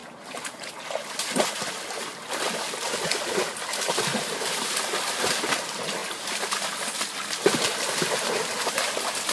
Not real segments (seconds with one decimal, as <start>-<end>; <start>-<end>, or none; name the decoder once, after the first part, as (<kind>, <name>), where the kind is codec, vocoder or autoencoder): 0.0-0.8 (vocoder, BigVGAN v2); 4.1-4.8; 6.0-6.5